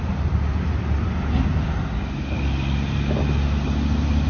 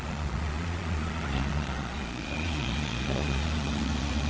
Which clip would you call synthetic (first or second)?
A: second